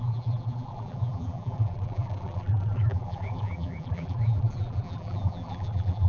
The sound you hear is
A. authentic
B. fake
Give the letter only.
B